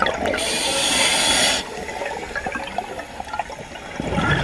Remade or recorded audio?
recorded